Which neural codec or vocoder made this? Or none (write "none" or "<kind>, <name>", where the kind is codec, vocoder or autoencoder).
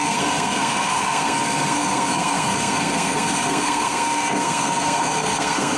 codec, SNAC